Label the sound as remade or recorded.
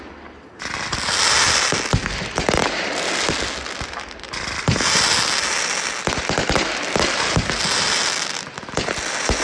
recorded